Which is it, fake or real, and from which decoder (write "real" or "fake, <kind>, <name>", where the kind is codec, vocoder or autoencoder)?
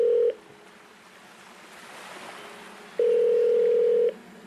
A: real